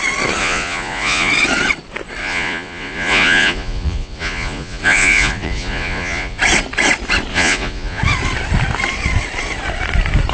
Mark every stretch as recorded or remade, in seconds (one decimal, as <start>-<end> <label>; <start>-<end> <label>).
0.0-0.4 recorded; 0.4-1.3 remade; 1.3-2.2 recorded; 2.2-6.4 remade; 6.4-7.3 recorded; 7.3-8.0 remade; 8.0-10.3 recorded